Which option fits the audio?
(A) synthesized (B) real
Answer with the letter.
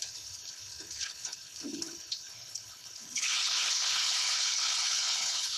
A